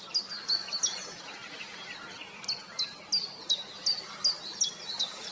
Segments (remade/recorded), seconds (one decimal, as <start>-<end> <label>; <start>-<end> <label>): 0.0-5.3 recorded